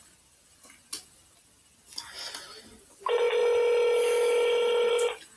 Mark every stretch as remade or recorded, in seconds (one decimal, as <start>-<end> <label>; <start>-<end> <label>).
0.0-5.4 recorded